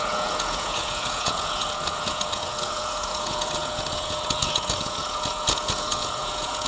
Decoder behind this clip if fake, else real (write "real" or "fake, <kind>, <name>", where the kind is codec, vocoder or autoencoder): fake, vocoder, Vocos